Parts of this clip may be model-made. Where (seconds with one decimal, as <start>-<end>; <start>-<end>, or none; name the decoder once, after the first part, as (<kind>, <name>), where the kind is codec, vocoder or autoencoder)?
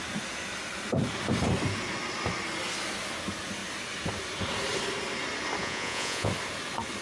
5.6-6.3 (vocoder, Vocos)